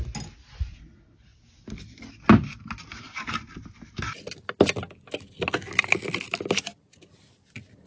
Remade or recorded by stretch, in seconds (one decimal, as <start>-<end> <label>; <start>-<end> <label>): 0.0-7.9 recorded